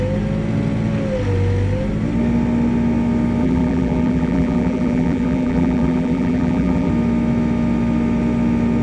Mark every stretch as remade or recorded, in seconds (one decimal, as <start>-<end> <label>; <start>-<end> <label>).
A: 0.0-3.4 recorded; 3.4-6.9 remade; 6.9-8.8 recorded